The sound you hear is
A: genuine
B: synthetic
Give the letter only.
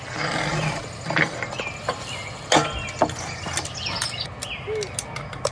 A